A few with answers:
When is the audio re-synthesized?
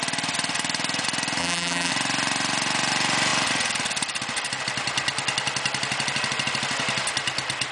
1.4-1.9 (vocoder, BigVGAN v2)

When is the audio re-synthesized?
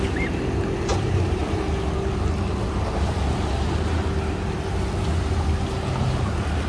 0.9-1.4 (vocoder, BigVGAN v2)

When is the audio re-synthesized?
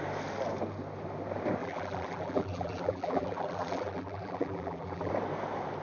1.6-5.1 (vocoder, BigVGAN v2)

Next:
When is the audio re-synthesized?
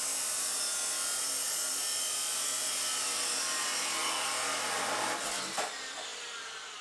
6.1-6.8 (vocoder, BigVGAN v2)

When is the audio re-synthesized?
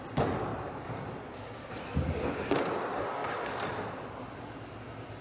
0.5-1.7 (vocoder, BigVGAN v2)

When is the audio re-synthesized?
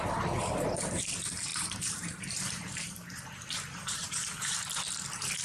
1.5-4.7 (vocoder, BigVGAN v2)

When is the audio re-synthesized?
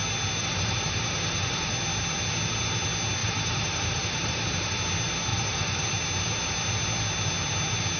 0.4-1.7 (vocoder, BigVGAN v2); 3.2-4.8; 5.3-5.9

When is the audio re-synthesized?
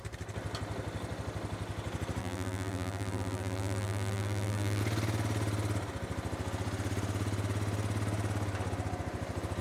2.2-4.8 (vocoder, BigVGAN v2)